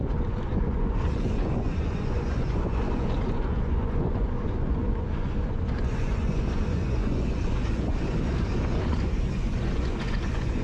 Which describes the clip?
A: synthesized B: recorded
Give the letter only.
A